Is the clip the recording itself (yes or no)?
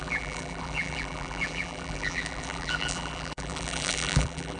no